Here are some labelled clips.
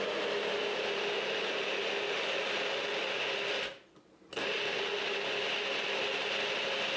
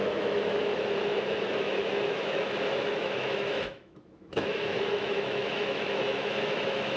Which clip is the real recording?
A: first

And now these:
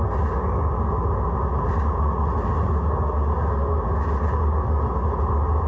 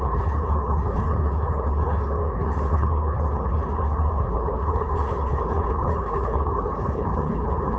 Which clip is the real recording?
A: first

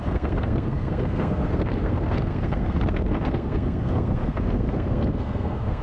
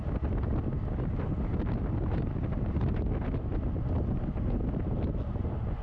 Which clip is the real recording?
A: second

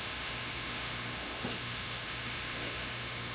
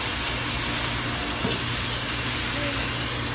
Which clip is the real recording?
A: second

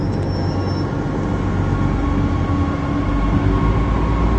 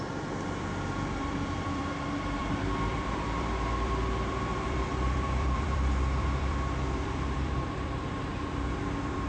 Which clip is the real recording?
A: first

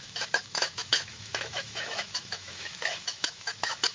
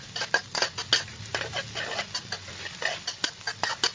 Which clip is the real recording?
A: second